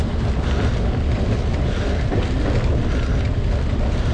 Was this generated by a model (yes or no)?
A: no